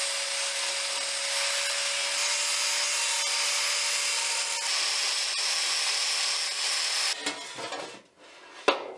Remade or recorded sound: recorded